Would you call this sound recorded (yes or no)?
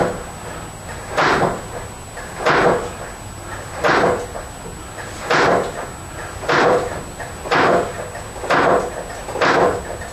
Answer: yes